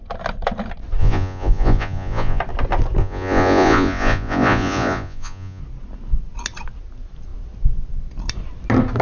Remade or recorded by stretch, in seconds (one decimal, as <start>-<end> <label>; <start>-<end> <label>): 0.0-1.0 recorded; 1.0-2.4 remade; 2.4-3.0 recorded; 3.0-5.6 remade; 5.6-9.0 recorded